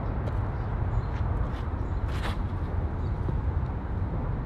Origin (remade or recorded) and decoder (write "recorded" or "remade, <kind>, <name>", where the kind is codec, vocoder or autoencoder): recorded